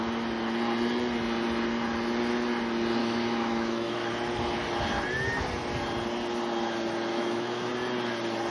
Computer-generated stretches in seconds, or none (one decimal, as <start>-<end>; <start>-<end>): 3.0-4.1; 7.1-7.7